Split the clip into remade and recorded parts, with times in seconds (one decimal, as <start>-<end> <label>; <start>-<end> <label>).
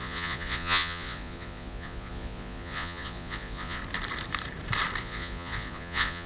0.0-3.8 remade; 3.8-5.0 recorded; 5.0-6.3 remade